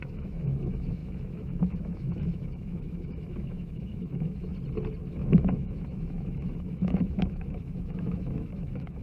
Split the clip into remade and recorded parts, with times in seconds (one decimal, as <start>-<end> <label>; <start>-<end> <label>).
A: 0.0-4.5 remade; 4.5-5.1 recorded; 5.1-9.0 remade